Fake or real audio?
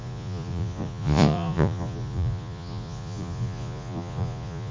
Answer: fake